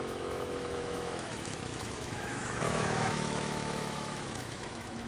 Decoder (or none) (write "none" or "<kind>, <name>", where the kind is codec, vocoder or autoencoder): autoencoder, DAC-VAE